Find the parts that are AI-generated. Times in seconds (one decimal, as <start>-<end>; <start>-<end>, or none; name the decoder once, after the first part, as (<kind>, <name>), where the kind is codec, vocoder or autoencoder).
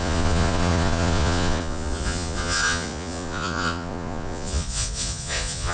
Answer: 0.0-5.7 (vocoder, Vocos)